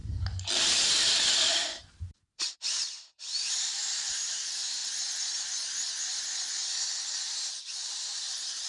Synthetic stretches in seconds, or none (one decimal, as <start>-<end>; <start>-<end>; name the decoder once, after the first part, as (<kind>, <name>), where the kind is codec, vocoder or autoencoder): 0.0-4.8 (vocoder, BigVGAN v2); 7.6-8.7